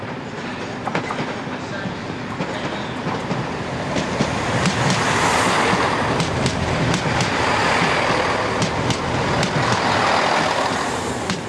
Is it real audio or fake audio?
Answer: real